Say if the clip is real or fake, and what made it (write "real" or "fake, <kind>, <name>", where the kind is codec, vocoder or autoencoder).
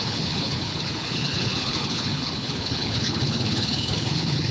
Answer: fake, codec, HILCodec